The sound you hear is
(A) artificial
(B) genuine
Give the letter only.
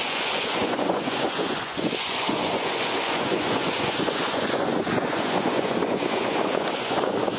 A